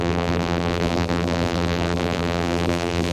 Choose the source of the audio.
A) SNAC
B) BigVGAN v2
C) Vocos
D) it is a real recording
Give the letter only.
B